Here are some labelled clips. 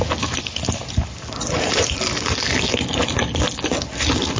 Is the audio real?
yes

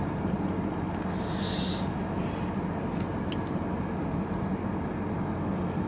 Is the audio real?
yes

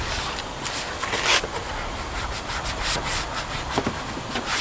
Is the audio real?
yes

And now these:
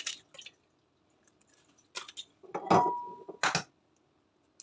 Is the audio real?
yes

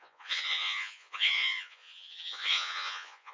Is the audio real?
no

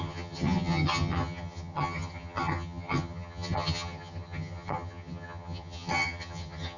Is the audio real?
no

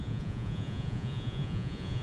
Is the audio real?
no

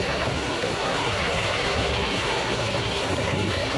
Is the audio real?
no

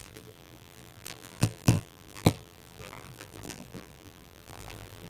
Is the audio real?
no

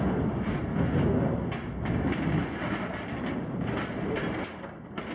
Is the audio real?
yes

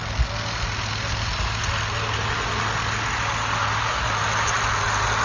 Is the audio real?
yes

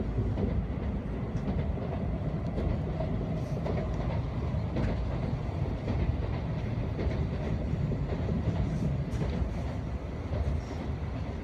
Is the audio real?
yes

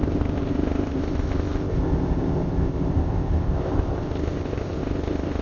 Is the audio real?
no